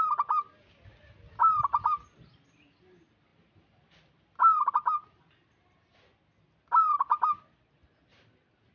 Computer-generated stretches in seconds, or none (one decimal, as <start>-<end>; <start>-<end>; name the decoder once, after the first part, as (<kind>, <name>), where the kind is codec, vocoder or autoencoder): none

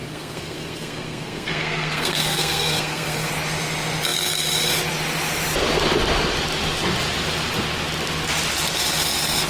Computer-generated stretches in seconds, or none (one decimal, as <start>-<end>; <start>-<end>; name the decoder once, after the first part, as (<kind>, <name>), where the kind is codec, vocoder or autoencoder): 0.0-3.3 (codec, SNAC)

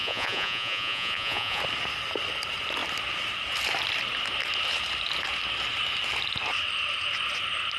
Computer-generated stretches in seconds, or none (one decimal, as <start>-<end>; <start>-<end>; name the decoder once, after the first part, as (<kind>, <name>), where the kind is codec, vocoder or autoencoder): 0.0-1.6 (vocoder, Vocos)

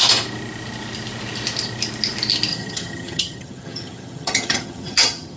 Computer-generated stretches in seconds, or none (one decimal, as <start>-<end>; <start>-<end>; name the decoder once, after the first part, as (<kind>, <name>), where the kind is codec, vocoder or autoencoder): 2.5-5.4 (vocoder, HiFi-GAN)